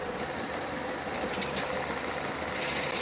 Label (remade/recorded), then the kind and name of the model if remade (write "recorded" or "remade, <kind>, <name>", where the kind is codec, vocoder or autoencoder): recorded